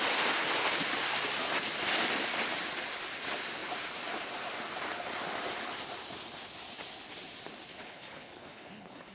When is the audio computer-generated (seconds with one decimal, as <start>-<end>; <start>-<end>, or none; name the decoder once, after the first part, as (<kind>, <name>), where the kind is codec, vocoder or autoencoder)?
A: 7.7-9.1 (codec, HILCodec)